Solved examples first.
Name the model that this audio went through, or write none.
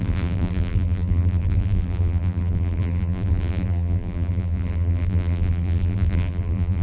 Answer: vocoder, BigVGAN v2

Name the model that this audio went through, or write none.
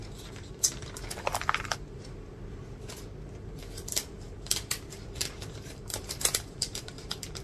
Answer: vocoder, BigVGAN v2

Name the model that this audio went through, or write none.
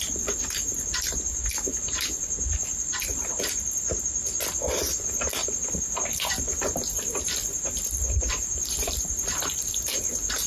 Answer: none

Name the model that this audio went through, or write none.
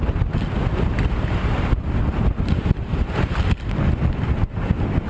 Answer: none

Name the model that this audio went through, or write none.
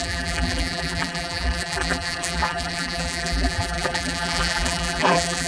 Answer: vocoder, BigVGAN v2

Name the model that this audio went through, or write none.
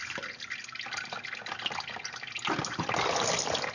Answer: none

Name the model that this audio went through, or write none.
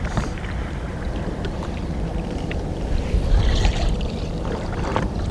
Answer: vocoder, BigVGAN v2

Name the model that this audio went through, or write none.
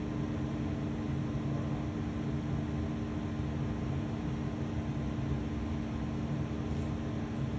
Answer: none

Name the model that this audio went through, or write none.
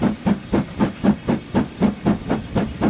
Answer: vocoder, BigVGAN v2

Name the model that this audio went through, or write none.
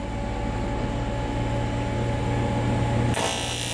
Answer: none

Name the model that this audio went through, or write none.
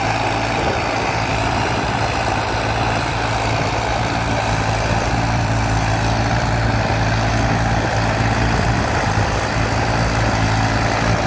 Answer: vocoder, BigVGAN v2